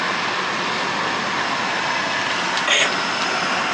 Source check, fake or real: real